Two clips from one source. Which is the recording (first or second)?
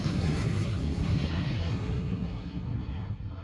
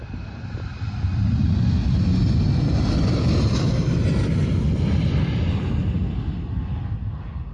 second